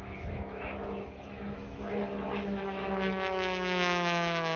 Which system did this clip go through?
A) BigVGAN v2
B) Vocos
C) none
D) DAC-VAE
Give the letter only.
D